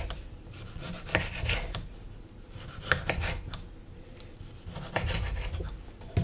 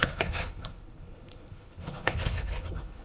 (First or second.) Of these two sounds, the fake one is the second